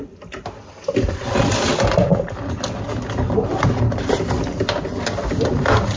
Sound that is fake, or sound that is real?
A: real